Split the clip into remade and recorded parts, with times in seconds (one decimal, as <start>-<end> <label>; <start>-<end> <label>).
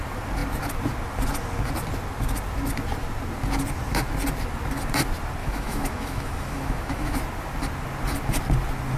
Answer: 0.0-5.4 recorded; 5.4-7.2 remade; 7.2-9.0 recorded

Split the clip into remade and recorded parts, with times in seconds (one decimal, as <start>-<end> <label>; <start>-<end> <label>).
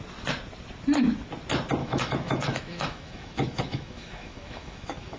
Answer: 0.0-1.8 recorded; 1.8-5.2 remade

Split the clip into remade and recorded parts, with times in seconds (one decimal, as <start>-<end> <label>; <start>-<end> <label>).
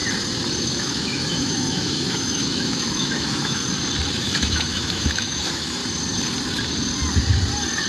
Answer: 0.0-0.6 recorded; 0.6-3.6 remade; 3.6-4.2 recorded; 4.2-5.8 remade; 5.8-7.9 recorded